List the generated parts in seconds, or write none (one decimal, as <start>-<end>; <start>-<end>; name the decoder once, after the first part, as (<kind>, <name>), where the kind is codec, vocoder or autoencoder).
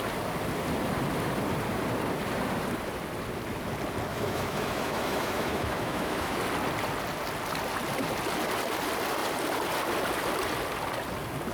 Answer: 4.1-6.4 (autoencoder, DAC-VAE)